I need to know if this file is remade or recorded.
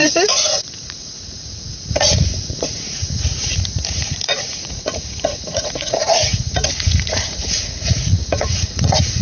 remade